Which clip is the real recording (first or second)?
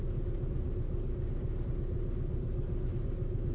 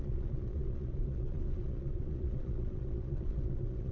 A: first